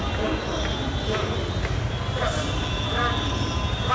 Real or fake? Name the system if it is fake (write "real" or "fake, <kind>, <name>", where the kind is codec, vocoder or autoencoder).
real